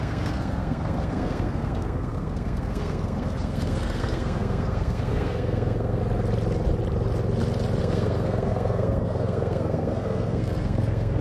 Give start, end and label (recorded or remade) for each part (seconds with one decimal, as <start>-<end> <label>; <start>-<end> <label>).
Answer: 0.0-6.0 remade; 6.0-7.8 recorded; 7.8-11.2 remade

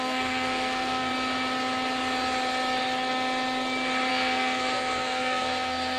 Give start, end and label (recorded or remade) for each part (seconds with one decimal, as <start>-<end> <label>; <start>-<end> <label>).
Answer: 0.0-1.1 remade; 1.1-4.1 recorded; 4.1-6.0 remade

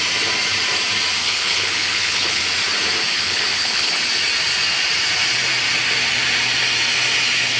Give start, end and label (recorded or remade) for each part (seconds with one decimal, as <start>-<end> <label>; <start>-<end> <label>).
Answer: 0.0-1.2 recorded; 1.2-2.4 remade; 2.4-3.1 recorded; 3.1-3.9 remade; 3.9-7.6 recorded